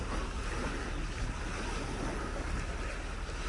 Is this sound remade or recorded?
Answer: recorded